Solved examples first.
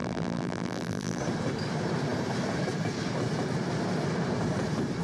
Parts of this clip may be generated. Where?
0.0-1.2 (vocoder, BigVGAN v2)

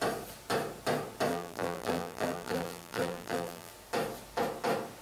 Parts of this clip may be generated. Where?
1.3-3.7 (vocoder, BigVGAN v2)

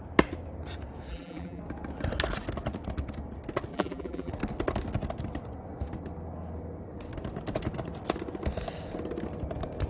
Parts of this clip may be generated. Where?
1.1-1.6 (vocoder, BigVGAN v2); 3.7-4.3

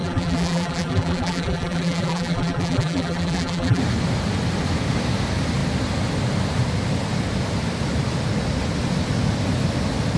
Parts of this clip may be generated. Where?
0.0-3.8 (vocoder, BigVGAN v2)